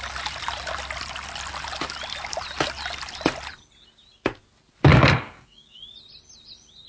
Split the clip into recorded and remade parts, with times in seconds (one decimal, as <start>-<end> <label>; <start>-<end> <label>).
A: 0.0-4.9 recorded; 4.9-5.8 remade; 5.8-6.9 recorded